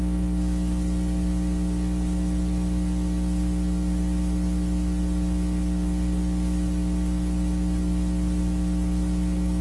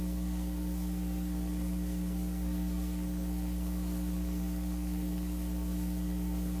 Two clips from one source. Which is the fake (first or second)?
second